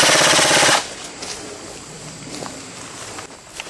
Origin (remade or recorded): remade